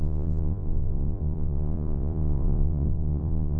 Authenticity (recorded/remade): remade